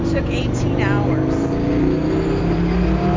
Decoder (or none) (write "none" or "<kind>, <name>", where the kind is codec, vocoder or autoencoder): none